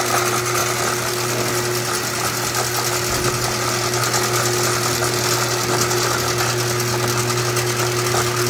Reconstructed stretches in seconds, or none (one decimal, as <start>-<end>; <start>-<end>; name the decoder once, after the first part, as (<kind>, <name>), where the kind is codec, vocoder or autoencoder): none